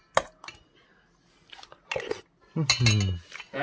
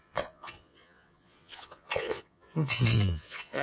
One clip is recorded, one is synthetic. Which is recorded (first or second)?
first